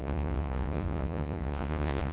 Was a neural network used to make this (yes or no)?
yes